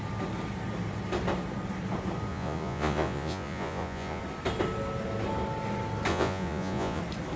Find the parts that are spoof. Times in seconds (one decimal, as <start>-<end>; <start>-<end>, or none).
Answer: 2.3-4.2; 6.1-7.0